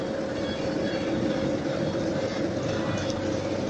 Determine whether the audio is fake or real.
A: real